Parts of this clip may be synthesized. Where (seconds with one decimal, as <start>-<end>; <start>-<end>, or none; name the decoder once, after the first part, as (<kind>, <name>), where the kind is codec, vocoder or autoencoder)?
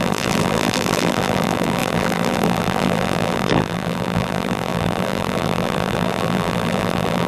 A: 0.0-7.3 (vocoder, BigVGAN v2)